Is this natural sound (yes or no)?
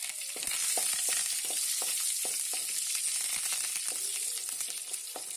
yes